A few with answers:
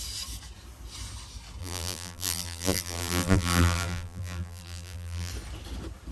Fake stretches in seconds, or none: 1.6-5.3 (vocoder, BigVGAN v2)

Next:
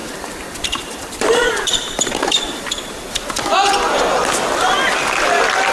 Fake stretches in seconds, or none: 0.0-2.6 (vocoder, BigVGAN v2)

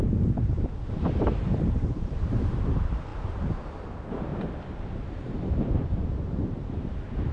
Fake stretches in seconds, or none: 0.0-7.3 (vocoder, BigVGAN v2)

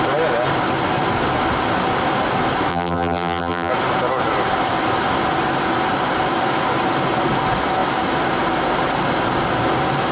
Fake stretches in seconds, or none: 2.7-3.7 (vocoder, BigVGAN v2)

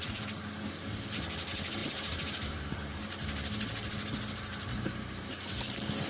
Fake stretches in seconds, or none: 1.8-3.0 (vocoder, BigVGAN v2); 4.5-5.3

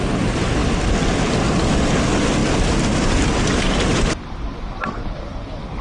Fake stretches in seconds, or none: none

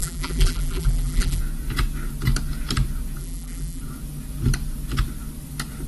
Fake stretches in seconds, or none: 0.0-1.4 (vocoder, BigVGAN v2); 3.2-3.8